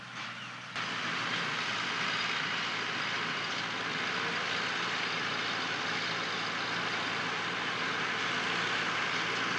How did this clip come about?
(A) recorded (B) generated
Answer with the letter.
A